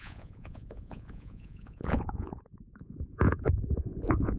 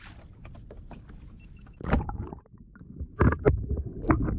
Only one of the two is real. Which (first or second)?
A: second